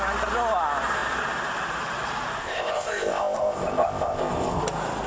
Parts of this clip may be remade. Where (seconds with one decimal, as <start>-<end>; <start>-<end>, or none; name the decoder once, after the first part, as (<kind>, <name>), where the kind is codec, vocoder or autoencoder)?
2.4-4.6 (codec, ZipCodec)